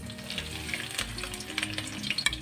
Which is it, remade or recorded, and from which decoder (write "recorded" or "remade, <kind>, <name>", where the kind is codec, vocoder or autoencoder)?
recorded